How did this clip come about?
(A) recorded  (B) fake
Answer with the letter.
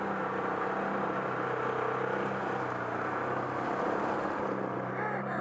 A